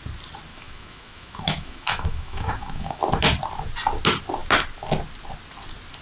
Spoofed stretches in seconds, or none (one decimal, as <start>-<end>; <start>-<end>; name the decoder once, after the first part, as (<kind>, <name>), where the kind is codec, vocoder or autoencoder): 0.5-3.0 (autoencoder, DAC-VAE)